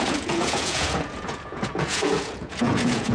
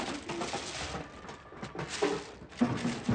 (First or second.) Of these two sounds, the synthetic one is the first